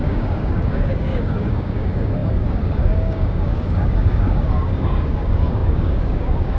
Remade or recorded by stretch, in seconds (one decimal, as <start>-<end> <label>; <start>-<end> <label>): 0.0-6.6 remade